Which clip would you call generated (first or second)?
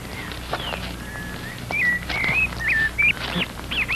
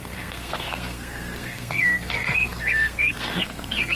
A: second